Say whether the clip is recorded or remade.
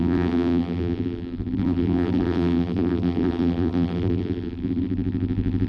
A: remade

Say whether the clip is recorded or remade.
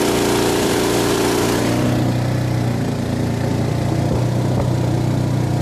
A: recorded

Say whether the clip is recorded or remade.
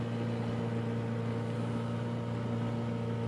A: recorded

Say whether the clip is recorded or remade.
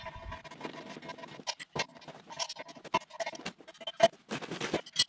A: recorded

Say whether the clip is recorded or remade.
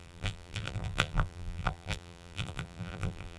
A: remade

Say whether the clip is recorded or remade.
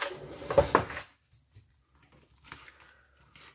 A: recorded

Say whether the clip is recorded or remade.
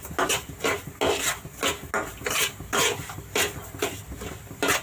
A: recorded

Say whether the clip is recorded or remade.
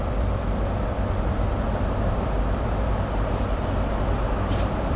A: remade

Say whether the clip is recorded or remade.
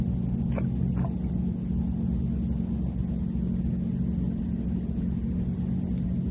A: recorded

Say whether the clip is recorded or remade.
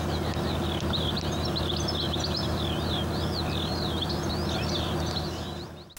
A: recorded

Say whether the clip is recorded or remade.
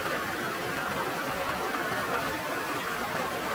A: remade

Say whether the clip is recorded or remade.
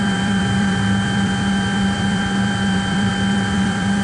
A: remade